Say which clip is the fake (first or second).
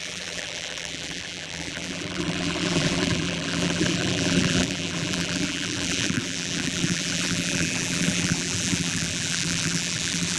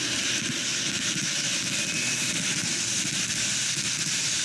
first